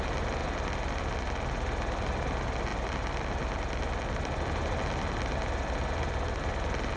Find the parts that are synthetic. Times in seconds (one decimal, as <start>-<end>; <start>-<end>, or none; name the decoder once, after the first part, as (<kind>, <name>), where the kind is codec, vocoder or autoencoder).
none